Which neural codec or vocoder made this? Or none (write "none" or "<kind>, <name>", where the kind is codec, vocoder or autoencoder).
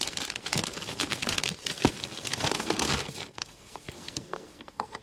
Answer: codec, SNAC